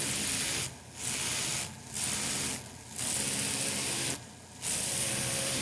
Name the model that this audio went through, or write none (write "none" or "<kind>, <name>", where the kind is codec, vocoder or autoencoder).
none